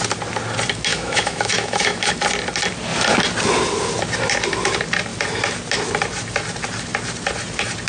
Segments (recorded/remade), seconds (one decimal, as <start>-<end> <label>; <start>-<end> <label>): 0.0-0.9 recorded; 0.9-2.1 remade; 2.1-7.9 recorded